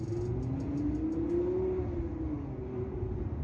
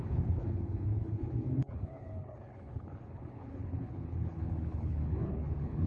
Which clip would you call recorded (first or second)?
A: first